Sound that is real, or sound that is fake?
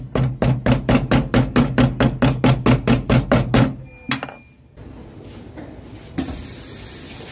real